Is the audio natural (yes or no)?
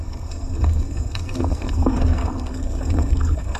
no